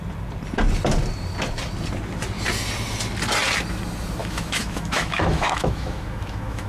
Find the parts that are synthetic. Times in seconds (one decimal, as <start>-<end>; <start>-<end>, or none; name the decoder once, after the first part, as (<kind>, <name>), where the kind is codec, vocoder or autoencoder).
4.2-6.7 (autoencoder, DAC-VAE)